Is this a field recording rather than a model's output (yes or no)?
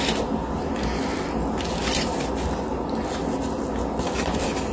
yes